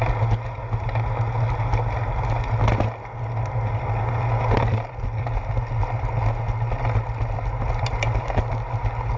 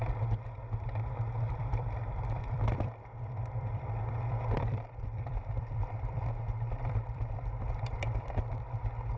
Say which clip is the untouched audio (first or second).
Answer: first